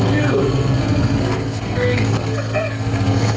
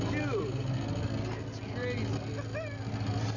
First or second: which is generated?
first